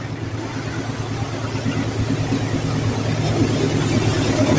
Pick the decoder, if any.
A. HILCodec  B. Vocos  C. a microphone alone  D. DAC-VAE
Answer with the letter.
C